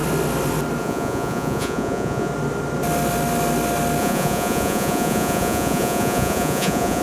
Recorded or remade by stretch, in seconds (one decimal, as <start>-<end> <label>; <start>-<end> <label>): 0.0-0.8 recorded; 0.8-2.3 remade; 2.3-4.0 recorded; 4.0-7.0 remade